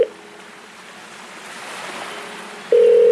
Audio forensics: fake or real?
real